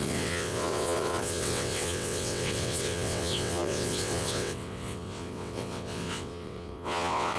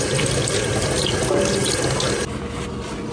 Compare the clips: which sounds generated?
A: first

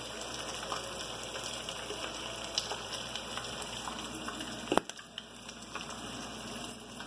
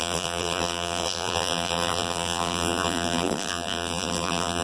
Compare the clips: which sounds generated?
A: second